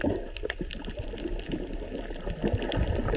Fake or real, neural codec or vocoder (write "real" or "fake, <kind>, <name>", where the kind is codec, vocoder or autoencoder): real